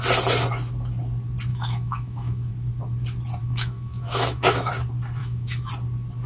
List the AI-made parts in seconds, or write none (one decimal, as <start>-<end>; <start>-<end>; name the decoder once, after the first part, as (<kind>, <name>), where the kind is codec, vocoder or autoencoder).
1.5-2.5 (autoencoder, DAC-VAE); 3.4-4.7; 5.2-5.7